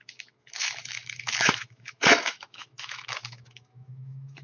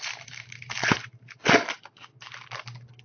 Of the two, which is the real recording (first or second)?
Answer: second